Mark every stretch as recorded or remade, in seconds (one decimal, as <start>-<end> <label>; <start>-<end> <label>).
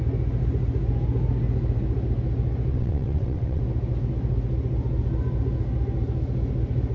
0.0-2.7 recorded; 2.7-3.6 remade; 3.6-6.9 recorded